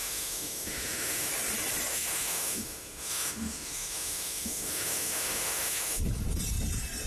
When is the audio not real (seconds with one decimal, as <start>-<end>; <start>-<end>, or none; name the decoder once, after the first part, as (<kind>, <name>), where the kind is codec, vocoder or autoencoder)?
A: 0.0-1.3 (autoencoder, DAC-VAE); 1.9-6.0